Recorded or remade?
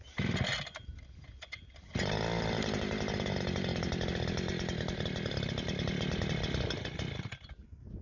recorded